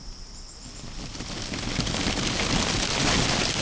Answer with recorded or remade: recorded